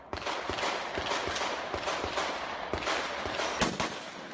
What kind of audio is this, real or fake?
real